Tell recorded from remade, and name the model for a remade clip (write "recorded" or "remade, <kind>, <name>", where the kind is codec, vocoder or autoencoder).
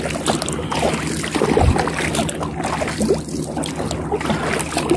recorded